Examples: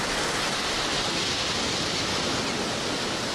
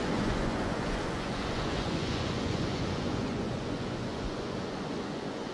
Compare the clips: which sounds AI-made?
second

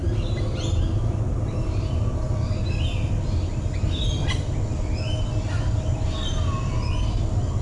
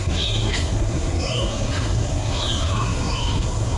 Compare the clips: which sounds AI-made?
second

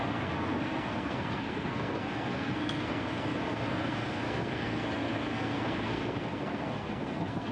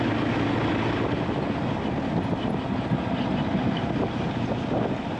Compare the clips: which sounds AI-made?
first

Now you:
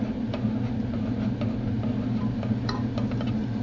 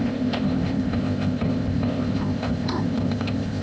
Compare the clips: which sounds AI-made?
second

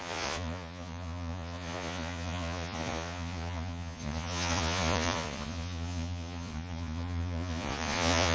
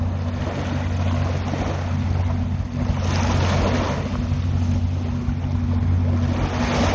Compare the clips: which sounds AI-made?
first